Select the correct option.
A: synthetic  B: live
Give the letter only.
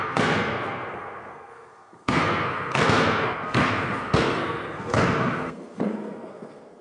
A